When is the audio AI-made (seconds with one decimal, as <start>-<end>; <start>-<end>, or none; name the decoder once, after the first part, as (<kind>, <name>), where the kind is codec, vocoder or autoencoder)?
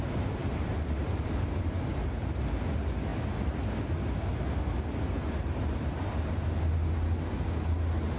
0.4-2.4 (vocoder, BigVGAN v2)